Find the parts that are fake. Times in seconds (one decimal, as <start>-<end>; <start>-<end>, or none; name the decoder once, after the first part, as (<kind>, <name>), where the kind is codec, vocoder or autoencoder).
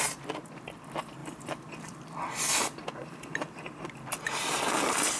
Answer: 1.2-2.6 (vocoder, BigVGAN v2); 3.0-3.8